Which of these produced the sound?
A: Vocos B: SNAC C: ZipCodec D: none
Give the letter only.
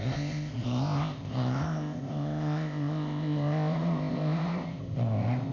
C